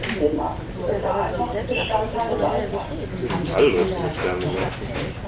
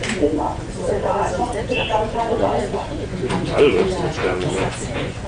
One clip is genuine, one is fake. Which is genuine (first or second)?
first